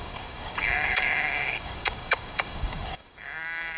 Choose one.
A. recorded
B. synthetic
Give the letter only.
B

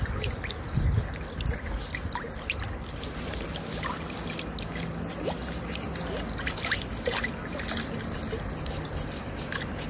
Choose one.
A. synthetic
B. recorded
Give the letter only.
B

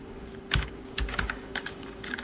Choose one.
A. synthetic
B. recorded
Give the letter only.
A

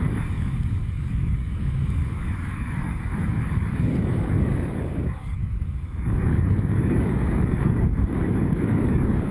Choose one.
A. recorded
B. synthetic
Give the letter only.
B